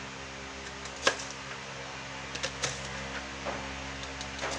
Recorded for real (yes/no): yes